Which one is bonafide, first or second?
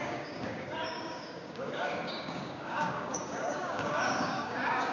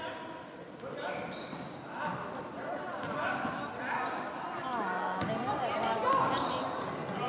second